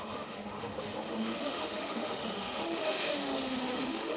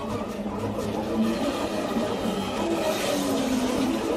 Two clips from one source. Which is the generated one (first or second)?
first